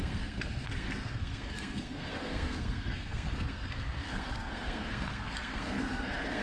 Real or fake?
fake